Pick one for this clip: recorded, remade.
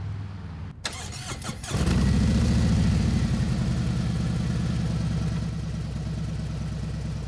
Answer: recorded